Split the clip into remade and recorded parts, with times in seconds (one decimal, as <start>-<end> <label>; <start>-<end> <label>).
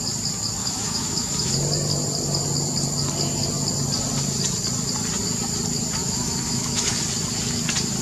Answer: 0.0-0.6 recorded; 0.6-1.5 remade; 1.5-6.0 recorded; 6.0-7.0 remade; 7.0-8.0 recorded